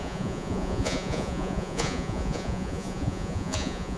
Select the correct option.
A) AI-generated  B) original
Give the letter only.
A